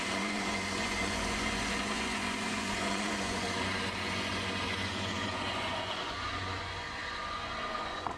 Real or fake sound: fake